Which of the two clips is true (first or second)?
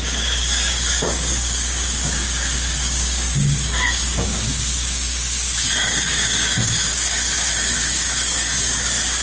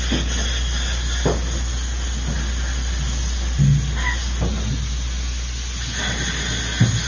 second